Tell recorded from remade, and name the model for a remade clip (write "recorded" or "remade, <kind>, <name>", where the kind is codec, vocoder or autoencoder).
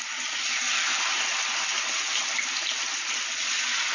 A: recorded